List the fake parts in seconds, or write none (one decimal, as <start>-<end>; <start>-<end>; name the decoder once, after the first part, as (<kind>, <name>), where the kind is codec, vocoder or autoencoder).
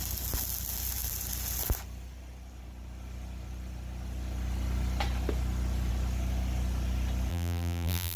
7.3-8.2 (vocoder, BigVGAN v2)